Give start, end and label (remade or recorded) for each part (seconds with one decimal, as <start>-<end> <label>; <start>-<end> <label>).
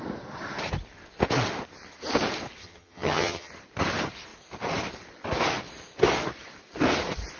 0.0-2.6 recorded; 2.6-3.5 remade; 3.5-7.4 recorded